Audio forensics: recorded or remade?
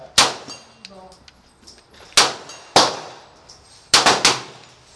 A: recorded